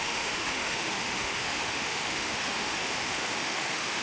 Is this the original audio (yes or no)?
no